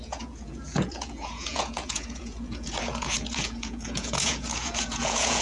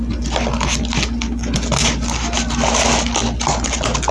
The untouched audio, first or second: second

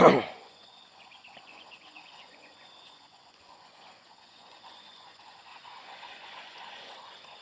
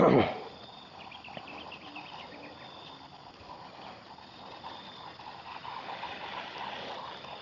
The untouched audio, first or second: second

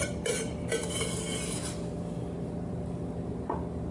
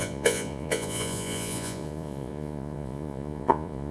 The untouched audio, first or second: first